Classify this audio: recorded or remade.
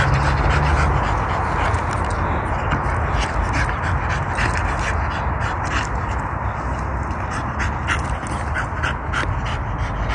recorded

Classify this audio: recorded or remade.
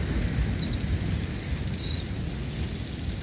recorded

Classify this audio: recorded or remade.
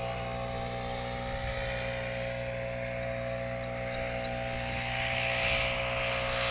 recorded